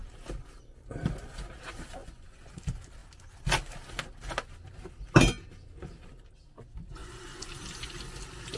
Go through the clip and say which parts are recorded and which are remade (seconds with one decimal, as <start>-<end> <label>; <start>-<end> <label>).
0.0-2.0 recorded; 2.0-2.6 remade; 2.6-7.0 recorded; 7.0-7.5 remade; 7.5-8.6 recorded